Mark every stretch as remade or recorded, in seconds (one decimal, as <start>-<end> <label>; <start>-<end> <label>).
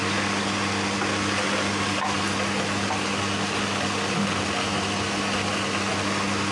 0.0-6.5 recorded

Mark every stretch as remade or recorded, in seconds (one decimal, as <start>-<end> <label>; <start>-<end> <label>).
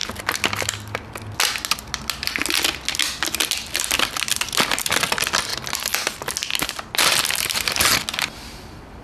0.0-9.0 recorded